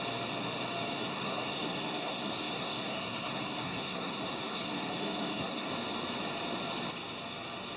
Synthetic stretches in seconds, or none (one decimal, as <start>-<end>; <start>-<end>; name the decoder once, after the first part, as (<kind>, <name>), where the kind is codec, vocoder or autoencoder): 1.0-5.7 (codec, SNAC)